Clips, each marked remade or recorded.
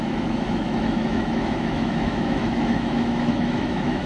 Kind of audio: remade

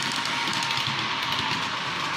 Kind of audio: recorded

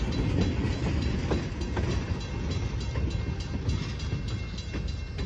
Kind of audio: recorded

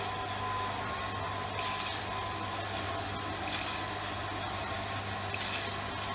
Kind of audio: recorded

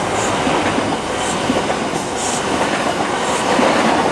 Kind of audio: recorded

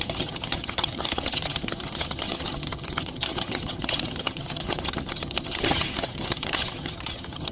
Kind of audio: remade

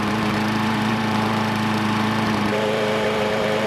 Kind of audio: remade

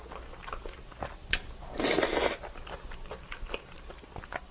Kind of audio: recorded